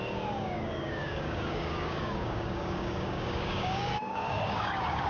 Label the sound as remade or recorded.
remade